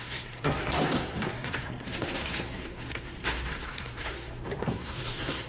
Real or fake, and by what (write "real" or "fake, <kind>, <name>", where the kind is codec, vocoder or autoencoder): fake, codec, SNAC